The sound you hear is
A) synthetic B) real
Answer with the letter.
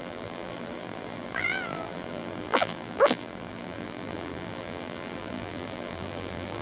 A